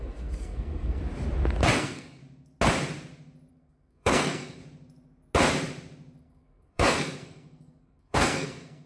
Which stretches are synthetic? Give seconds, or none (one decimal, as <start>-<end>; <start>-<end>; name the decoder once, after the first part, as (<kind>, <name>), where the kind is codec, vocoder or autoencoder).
0.0-1.0 (codec, SNAC); 1.8-2.2; 3.5-4.6; 6.2-8.9